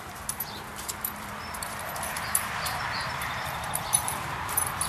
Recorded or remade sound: remade